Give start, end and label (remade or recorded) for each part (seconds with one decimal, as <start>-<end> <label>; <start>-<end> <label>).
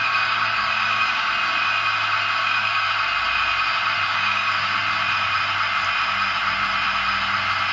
0.0-1.3 remade; 1.3-2.4 recorded; 2.4-2.9 remade; 2.9-4.1 recorded; 4.1-4.8 remade; 4.8-7.7 recorded